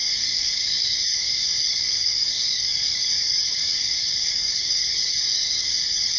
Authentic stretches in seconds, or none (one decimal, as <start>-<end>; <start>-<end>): none